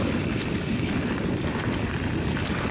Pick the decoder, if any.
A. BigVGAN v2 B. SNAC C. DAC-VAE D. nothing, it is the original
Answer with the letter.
D